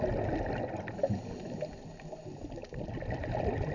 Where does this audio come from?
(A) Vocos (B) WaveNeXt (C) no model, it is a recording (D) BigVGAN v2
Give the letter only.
C